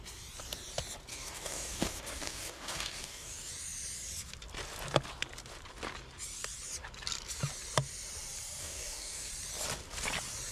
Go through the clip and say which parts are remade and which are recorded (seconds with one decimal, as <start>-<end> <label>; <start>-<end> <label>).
0.0-1.1 recorded; 1.1-3.5 remade; 3.5-8.6 recorded; 8.6-9.3 remade; 9.3-10.5 recorded